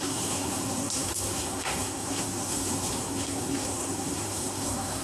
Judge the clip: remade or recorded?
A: remade